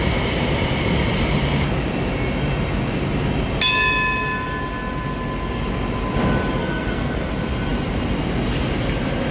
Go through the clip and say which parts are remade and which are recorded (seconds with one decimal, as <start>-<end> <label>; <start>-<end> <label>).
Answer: 0.0-6.6 recorded; 6.6-7.3 remade; 7.3-9.3 recorded